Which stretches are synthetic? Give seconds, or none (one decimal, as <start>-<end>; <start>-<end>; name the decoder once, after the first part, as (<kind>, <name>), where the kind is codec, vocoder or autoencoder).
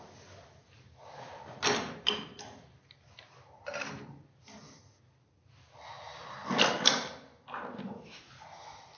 7.7-8.3 (autoencoder, DAC-VAE)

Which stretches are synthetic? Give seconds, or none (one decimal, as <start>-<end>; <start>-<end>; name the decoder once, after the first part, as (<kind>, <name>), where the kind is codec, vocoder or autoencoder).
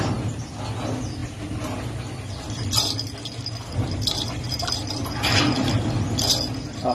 none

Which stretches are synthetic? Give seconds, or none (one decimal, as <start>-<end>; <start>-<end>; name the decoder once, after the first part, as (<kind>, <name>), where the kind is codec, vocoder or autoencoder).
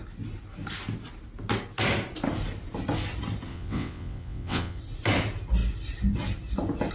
3.5-4.8 (vocoder, WaveNeXt)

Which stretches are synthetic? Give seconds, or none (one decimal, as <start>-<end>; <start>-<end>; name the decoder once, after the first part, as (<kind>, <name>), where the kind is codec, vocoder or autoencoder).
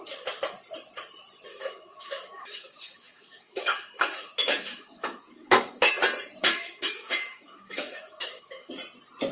1.5-5.9 (autoencoder, DAC-VAE); 6.4-8.7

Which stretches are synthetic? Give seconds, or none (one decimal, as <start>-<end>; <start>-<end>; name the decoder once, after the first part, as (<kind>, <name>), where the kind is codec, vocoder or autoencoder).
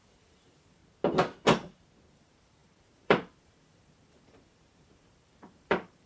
0.0-0.8 (vocoder, BigVGAN v2); 2.1-6.1